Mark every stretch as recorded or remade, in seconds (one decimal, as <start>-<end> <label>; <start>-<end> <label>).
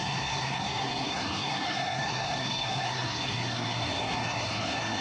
0.0-5.0 remade